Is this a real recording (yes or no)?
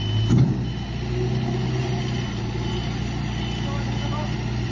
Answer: yes